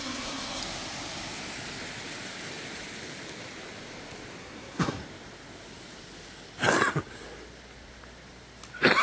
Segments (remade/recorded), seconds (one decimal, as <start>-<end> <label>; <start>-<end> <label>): 0.0-0.6 remade; 0.6-4.4 recorded; 4.4-5.0 remade; 5.0-9.0 recorded